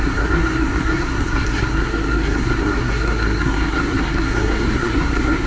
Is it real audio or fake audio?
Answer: fake